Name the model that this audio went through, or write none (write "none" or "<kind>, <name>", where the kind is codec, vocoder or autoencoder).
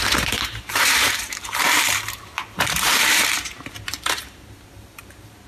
vocoder, BigVGAN v2